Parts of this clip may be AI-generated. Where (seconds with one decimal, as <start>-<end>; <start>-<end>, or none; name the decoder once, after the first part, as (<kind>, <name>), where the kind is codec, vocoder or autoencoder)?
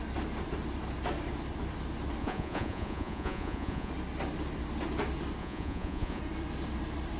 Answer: 2.2-3.9 (vocoder, Vocos); 5.4-6.2